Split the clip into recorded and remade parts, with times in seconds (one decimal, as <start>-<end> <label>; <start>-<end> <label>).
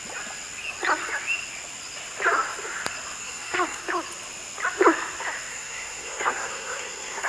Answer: 0.0-3.2 recorded; 3.2-3.8 remade; 3.8-5.5 recorded; 5.5-7.3 remade